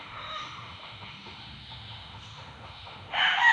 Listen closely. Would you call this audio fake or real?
fake